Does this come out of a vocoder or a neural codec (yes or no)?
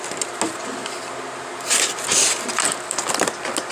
no